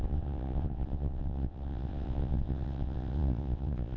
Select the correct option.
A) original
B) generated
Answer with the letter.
B